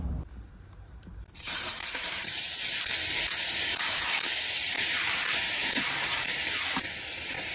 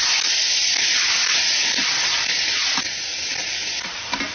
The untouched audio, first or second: second